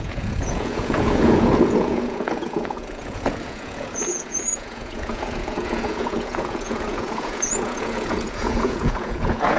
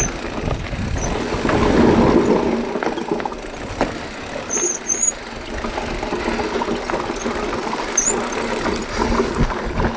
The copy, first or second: first